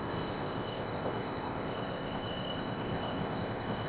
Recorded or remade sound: remade